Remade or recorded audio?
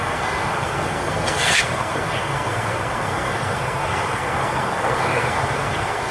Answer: remade